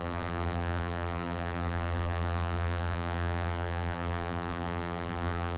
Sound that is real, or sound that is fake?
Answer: fake